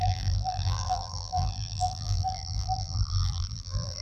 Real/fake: fake